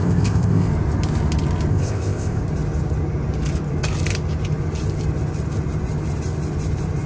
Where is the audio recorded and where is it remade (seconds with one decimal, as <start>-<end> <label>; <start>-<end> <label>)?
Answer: 0.0-0.7 remade; 0.7-1.7 recorded; 1.7-2.4 remade; 2.4-7.1 recorded